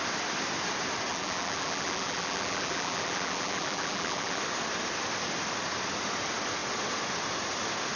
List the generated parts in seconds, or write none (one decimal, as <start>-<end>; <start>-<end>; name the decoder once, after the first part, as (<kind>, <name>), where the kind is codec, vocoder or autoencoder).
1.1-4.4 (vocoder, BigVGAN v2)